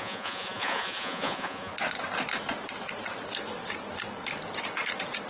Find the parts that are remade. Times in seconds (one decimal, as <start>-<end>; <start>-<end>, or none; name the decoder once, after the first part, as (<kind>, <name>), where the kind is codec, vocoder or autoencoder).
0.0-1.7 (vocoder, Vocos)